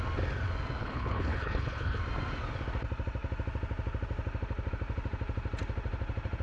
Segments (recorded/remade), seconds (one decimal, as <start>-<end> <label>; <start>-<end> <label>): 0.0-0.8 recorded; 0.8-2.0 remade; 2.0-6.4 recorded